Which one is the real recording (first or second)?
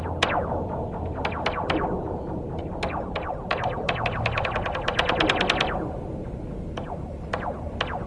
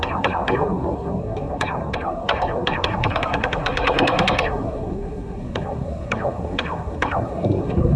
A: first